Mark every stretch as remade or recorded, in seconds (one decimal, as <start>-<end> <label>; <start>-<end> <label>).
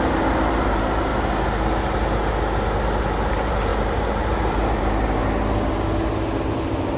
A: 0.0-1.1 remade; 1.1-3.3 recorded; 3.3-5.2 remade; 5.2-6.6 recorded; 6.6-7.0 remade